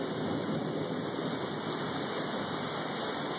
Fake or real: real